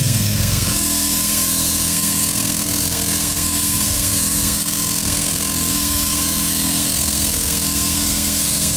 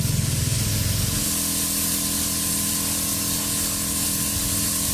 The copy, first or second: first